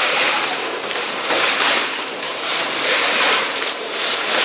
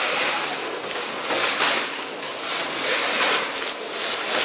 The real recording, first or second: second